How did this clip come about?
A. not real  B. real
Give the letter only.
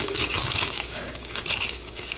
A